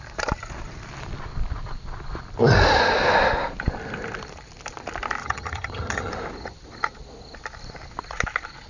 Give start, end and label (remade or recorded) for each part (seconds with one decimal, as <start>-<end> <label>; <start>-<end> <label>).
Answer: 0.0-5.2 recorded; 5.2-6.1 remade; 6.1-8.7 recorded